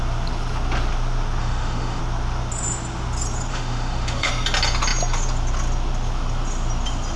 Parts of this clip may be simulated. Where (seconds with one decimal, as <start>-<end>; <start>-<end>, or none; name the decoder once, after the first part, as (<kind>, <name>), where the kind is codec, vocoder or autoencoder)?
1.4-2.0 (autoencoder, DAC-VAE); 3.5-4.3